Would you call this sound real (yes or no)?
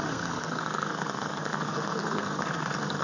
no